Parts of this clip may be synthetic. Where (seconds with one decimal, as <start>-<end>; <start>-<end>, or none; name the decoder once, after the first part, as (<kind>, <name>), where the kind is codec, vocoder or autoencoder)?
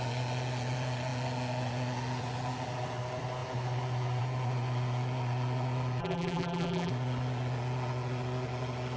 6.0-6.9 (vocoder, BigVGAN v2)